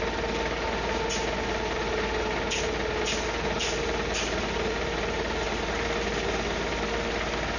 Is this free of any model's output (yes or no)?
yes